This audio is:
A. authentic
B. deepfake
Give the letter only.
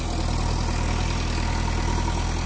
A